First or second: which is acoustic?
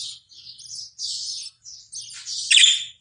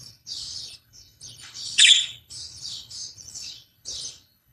first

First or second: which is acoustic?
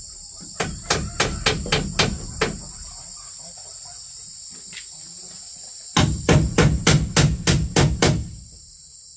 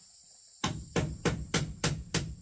first